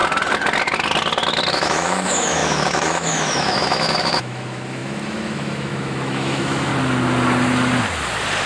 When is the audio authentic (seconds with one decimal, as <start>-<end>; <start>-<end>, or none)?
0.0-1.5; 6.7-8.5